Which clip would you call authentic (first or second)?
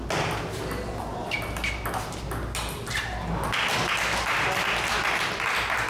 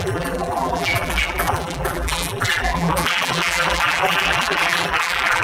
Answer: first